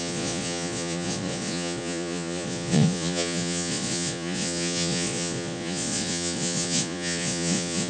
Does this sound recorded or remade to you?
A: remade